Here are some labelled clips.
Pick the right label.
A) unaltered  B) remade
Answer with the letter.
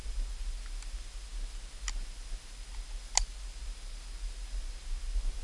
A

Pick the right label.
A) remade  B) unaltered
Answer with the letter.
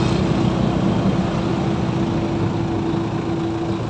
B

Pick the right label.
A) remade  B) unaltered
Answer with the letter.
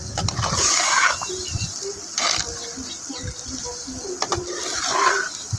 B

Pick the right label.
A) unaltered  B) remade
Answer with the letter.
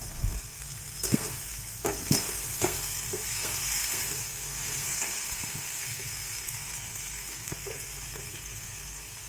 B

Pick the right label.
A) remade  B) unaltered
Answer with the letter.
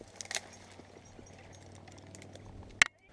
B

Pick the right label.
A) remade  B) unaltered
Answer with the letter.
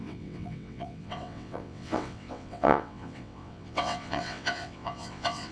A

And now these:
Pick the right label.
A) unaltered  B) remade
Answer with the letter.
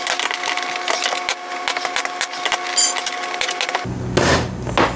A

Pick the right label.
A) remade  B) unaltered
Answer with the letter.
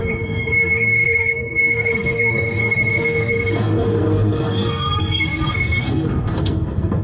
A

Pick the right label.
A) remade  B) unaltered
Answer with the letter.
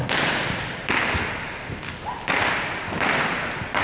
B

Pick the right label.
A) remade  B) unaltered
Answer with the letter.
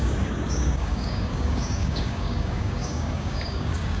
A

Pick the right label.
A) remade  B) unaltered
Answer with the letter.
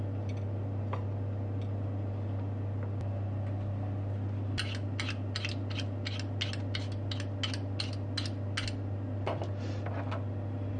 B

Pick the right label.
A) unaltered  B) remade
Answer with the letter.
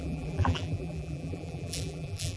B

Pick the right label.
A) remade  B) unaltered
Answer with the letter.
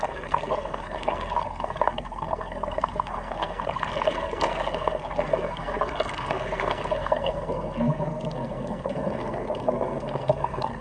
A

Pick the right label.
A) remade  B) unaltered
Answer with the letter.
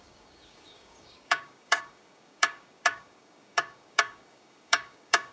A